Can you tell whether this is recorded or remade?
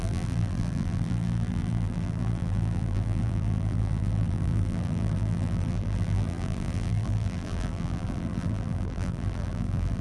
remade